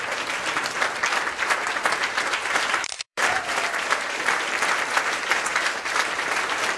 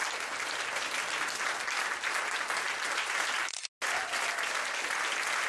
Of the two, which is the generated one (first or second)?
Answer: first